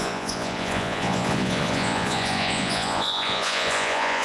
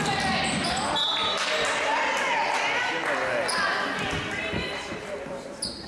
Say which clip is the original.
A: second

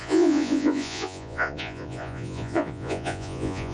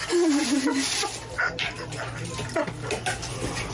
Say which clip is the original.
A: second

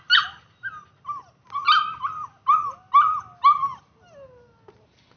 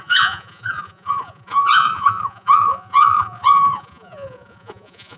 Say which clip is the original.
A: first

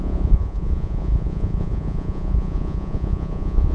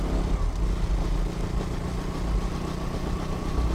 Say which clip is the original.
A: second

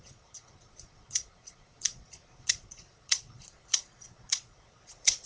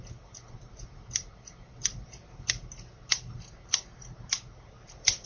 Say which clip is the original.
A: second